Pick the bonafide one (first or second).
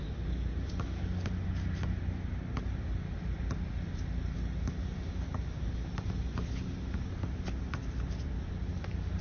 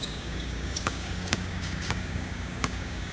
first